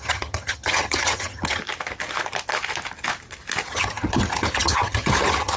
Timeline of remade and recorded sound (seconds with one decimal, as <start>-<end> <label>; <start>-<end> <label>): 0.0-1.6 remade; 1.6-3.7 recorded; 3.7-5.6 remade